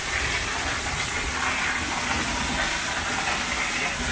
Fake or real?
real